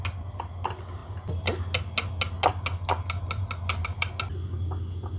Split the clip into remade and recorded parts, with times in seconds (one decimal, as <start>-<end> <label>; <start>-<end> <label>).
0.0-5.2 recorded